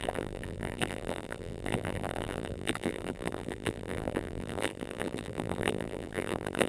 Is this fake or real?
fake